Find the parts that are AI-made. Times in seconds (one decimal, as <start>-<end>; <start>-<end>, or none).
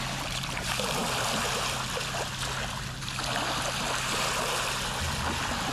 none